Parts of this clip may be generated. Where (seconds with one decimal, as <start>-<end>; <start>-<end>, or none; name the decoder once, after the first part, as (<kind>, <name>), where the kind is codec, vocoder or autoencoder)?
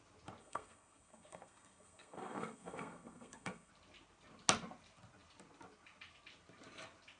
0.4-3.7 (codec, SNAC)